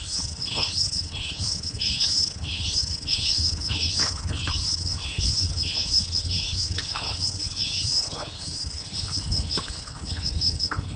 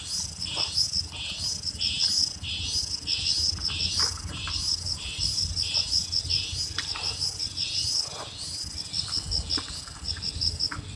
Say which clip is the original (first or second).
second